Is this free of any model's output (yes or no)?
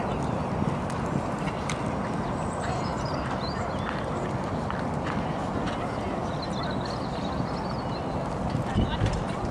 yes